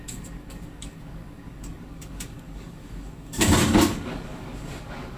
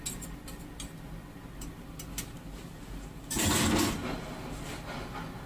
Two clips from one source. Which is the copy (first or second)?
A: first